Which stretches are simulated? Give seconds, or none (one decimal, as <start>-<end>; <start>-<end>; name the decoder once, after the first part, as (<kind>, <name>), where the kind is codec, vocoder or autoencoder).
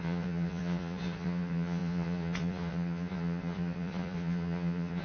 0.0-5.0 (vocoder, Vocos)